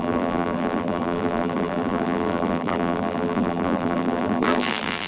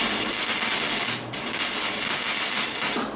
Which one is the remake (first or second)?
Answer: first